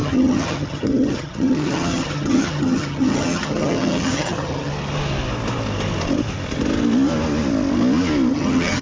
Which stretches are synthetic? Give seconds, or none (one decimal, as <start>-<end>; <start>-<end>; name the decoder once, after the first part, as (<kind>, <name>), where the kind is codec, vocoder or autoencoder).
0.0-4.7 (vocoder, HiFi-GAN); 8.3-8.8